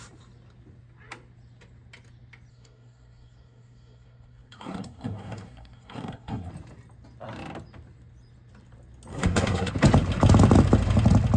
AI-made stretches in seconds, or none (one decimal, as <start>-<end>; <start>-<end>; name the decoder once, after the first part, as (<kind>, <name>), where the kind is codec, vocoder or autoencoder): 2.5-6.5 (codec, SNAC); 9.1-9.7